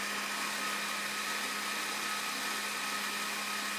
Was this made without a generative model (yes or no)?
yes